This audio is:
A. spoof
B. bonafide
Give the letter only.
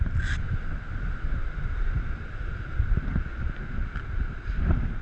B